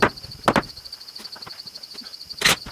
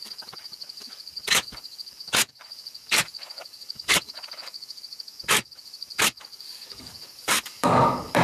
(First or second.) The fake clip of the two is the second